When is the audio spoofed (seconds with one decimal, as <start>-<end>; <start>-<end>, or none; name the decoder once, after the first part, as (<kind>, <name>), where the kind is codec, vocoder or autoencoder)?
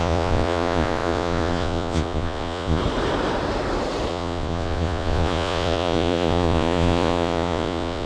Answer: 0.0-2.8 (vocoder, Vocos); 4.1-8.1